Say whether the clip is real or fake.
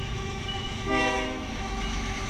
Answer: fake